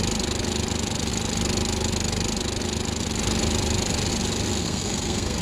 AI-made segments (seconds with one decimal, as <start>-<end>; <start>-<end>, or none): 4.6-5.4